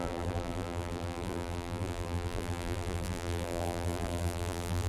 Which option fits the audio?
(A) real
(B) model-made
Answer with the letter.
B